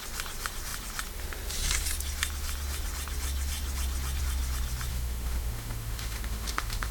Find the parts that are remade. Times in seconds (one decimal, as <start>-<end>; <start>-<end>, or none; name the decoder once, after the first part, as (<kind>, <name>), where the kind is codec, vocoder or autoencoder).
4.9-6.9 (autoencoder, DAC-VAE)